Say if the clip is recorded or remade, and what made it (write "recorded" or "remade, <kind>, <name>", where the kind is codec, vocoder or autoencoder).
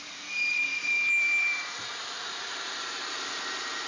remade, vocoder, BigVGAN v2